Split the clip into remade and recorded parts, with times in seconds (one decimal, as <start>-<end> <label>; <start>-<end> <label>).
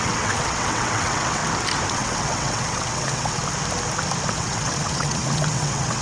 0.0-1.4 remade; 1.4-1.9 recorded; 1.9-3.4 remade; 3.4-4.3 recorded; 4.3-6.0 remade